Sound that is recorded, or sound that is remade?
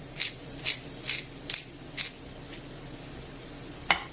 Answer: recorded